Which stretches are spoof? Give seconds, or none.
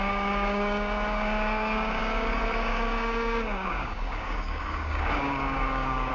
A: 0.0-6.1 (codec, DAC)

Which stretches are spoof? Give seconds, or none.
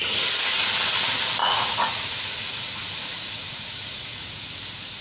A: 1.4-4.4 (vocoder, Vocos)